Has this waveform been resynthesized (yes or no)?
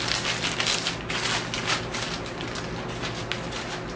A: no